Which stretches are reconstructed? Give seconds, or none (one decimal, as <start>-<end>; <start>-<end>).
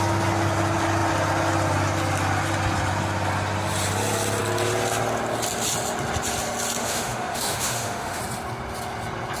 6.8-8.2